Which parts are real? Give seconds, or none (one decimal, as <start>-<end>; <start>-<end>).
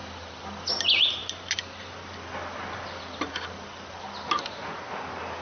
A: 0.0-5.4